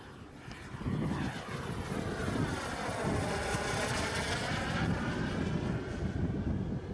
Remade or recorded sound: recorded